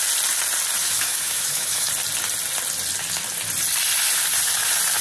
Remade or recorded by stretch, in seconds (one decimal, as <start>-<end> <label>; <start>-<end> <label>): 0.0-0.8 recorded; 0.8-1.9 remade; 1.9-5.0 recorded